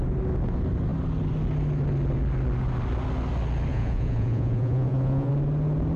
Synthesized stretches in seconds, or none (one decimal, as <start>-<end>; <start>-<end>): 3.7-5.3